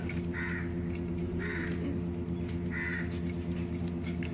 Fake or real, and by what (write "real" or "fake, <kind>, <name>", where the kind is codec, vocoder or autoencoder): real